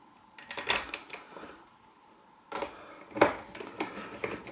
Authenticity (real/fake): real